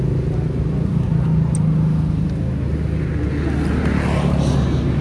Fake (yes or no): no